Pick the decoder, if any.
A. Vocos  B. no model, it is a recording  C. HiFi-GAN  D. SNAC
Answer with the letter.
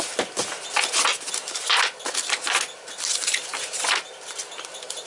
B